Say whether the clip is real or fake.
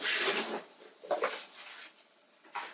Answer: real